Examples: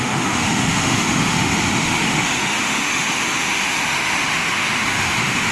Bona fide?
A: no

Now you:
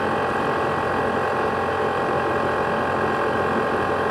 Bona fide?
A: yes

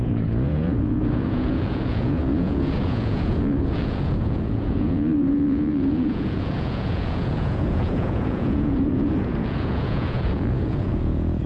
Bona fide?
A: no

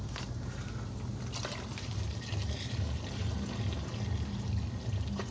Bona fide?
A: yes